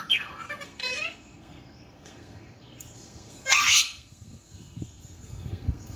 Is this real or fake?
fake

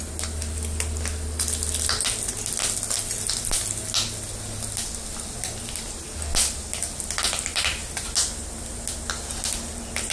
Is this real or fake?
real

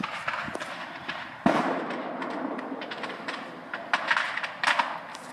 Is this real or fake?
real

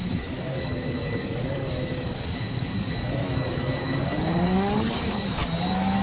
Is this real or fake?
fake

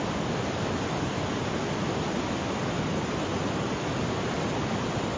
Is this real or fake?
real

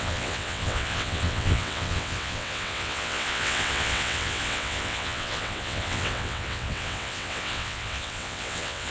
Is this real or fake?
fake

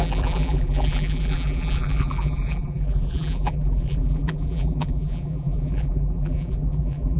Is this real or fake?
fake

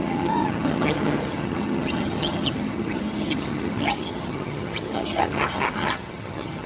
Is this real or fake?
fake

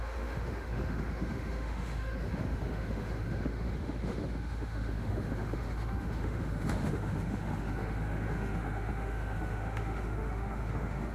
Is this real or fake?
fake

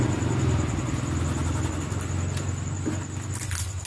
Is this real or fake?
real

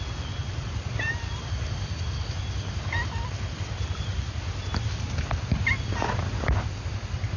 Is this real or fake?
real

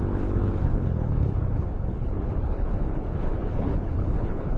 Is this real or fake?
fake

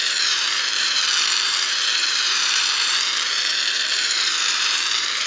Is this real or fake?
fake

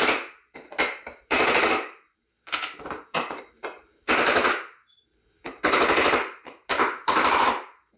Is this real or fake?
fake